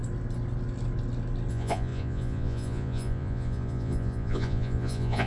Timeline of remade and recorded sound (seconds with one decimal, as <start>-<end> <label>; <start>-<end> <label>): 0.0-1.5 recorded; 1.5-5.3 remade

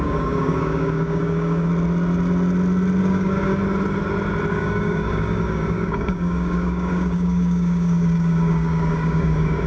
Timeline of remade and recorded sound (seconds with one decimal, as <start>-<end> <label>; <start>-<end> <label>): 0.0-1.7 remade; 1.7-3.0 recorded; 3.0-3.6 remade; 3.6-4.5 recorded; 4.5-9.7 remade

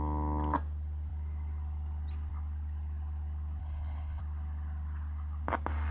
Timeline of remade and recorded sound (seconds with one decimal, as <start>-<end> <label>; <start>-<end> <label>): 0.0-3.6 recorded; 3.6-4.2 remade; 4.2-5.9 recorded

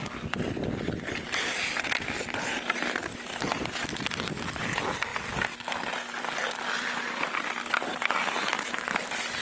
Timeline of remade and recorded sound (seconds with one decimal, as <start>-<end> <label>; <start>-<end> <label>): 0.0-9.4 recorded

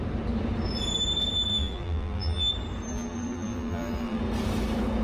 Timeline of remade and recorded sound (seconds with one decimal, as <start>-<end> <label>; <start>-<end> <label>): 0.0-1.5 recorded; 1.5-2.5 remade; 2.5-2.9 recorded; 2.9-4.2 remade; 4.2-5.0 recorded

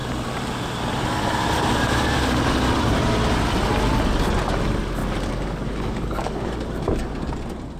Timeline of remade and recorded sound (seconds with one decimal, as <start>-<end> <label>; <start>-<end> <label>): 0.0-5.0 recorded; 5.0-7.3 remade; 7.3-7.8 recorded

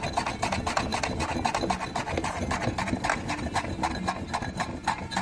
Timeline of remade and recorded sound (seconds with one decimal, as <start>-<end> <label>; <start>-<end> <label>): 0.0-5.2 recorded

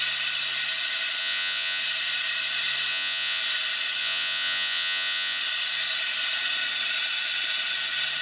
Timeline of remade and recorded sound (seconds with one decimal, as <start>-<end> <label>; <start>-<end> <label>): 0.0-1.2 recorded; 1.2-1.8 remade; 1.8-2.9 recorded; 2.9-3.4 remade; 3.4-4.0 recorded; 4.0-5.4 remade; 5.4-8.2 recorded